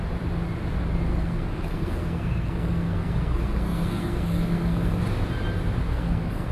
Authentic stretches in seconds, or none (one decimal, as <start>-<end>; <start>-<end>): 0.0-1.1; 5.0-5.9

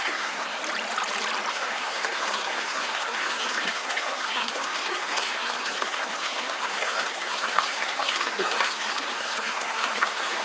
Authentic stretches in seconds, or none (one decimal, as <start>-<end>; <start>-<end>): 0.6-1.5

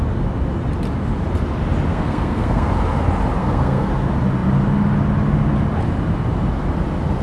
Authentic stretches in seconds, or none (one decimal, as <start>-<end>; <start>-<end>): 0.0-1.9; 2.7-3.4; 3.9-7.2

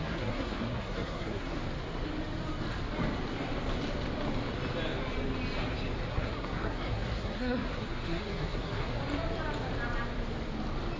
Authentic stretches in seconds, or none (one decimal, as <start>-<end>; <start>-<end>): 1.6-6.1; 9.0-11.0

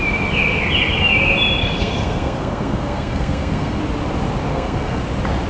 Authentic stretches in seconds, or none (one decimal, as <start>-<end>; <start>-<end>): 0.0-1.6; 3.8-4.5; 5.0-5.5

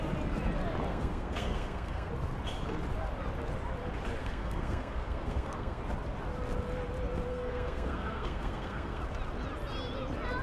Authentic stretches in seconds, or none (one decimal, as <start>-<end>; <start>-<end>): 0.0-0.9; 2.1-4.2; 5.8-7.3; 9.0-10.4